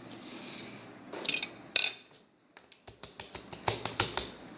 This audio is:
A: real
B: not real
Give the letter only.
A